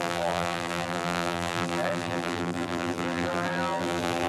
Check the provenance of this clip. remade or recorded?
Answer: remade